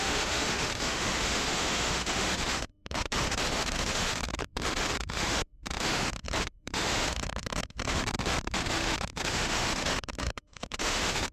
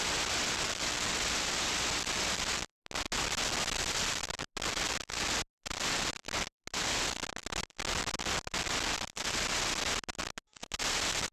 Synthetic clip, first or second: first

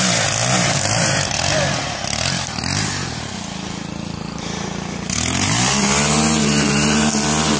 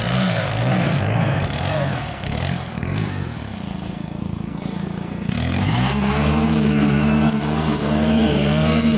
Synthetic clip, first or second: second